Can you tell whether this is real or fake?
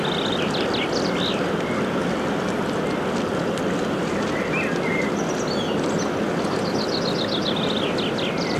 real